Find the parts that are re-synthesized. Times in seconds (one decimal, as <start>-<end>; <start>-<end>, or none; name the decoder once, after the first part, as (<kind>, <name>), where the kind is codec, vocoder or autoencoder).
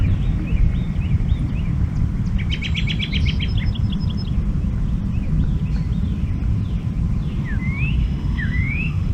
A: 8.0-9.1 (autoencoder, DAC-VAE)